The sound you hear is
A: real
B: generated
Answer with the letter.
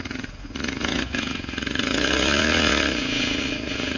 B